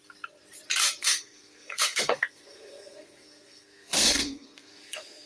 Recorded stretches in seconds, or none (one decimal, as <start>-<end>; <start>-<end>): 0.0-1.0